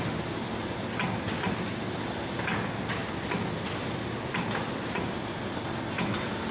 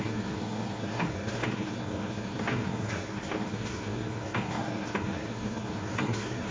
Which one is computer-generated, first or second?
second